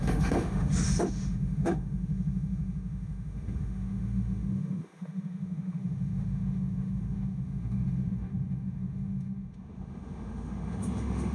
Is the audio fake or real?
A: fake